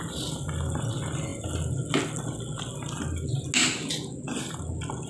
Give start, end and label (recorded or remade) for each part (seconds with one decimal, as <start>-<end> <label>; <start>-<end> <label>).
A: 0.0-5.1 recorded

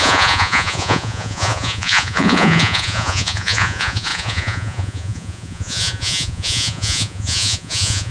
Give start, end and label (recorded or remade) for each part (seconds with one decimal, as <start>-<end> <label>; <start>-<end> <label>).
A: 0.0-8.1 remade

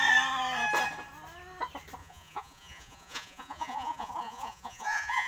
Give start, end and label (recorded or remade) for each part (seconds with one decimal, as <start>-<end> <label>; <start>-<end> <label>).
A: 0.0-2.0 recorded; 2.0-5.3 remade

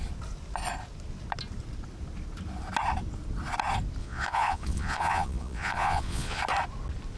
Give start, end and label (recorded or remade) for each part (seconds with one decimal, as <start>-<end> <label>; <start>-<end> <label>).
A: 0.0-4.0 recorded; 4.0-6.4 remade; 6.4-7.2 recorded

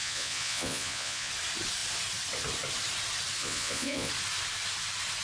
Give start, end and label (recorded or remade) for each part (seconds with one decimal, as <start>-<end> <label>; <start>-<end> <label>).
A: 0.0-1.3 remade; 1.3-3.4 recorded; 3.4-4.1 remade; 4.1-5.2 recorded

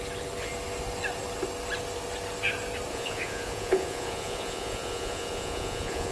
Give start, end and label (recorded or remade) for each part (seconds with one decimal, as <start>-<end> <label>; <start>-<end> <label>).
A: 0.0-2.9 recorded; 2.9-6.1 remade

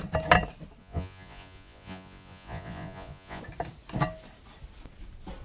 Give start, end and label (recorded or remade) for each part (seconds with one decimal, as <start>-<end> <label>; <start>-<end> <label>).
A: 0.0-0.8 recorded; 0.8-3.4 remade; 3.4-5.4 recorded